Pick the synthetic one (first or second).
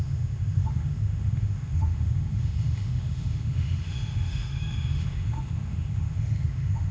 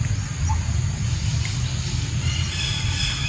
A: first